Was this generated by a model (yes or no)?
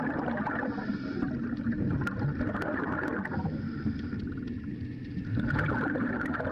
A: no